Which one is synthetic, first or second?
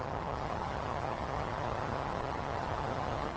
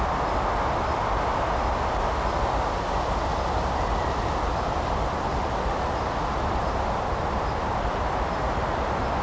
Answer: first